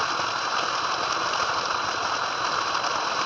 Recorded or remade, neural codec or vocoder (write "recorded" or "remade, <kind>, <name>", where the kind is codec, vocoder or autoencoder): recorded